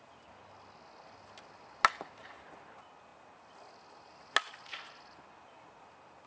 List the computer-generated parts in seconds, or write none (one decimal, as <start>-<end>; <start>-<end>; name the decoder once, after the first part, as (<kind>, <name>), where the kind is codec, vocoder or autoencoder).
none